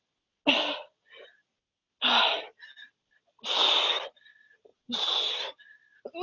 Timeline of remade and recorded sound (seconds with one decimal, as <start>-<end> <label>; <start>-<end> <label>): 0.0-4.7 recorded; 4.7-5.3 remade; 5.3-6.2 recorded

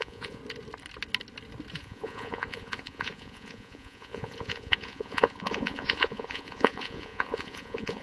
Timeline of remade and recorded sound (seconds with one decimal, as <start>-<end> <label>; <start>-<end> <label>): 0.0-0.4 remade; 0.4-1.8 recorded; 1.8-8.0 remade